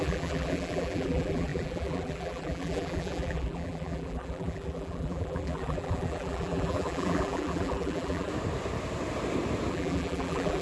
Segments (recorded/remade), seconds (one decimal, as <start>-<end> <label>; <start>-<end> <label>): 0.0-8.3 remade; 8.3-9.7 recorded; 9.7-10.6 remade